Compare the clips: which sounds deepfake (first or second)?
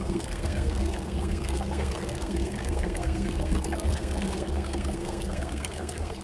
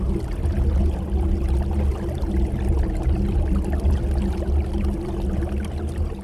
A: first